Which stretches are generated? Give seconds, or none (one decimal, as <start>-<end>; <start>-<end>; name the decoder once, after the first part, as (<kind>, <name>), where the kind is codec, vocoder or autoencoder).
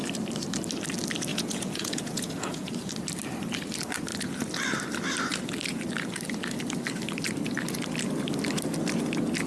1.3-2.7 (vocoder, Vocos)